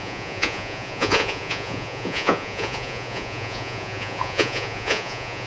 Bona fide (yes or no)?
no